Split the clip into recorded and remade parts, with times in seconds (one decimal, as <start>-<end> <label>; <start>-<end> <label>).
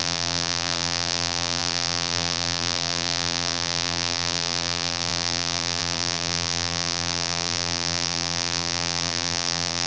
0.0-9.9 remade